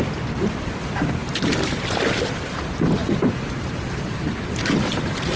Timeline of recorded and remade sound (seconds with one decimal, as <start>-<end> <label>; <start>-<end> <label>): 0.0-5.4 remade